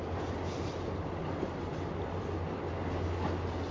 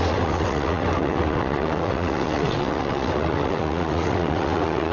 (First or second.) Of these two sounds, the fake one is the second